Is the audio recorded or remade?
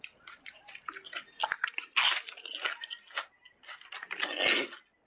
recorded